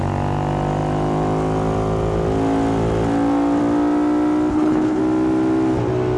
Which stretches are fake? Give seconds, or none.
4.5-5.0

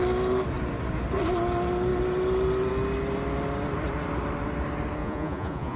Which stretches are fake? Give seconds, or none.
5.0-5.8

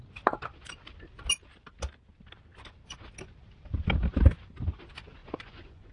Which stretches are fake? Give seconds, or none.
5.2-5.9